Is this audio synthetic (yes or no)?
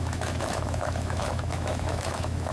yes